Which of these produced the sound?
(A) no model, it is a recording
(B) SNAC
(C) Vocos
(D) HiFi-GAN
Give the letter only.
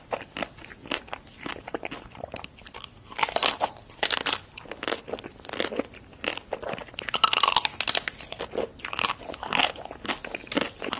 A